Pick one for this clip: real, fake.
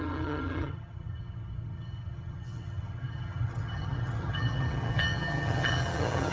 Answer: fake